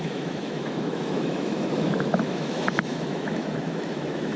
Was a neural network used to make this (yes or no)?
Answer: yes